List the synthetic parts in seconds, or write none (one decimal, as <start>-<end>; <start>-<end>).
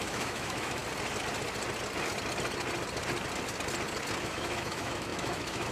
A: 0.0-0.8; 4.2-5.7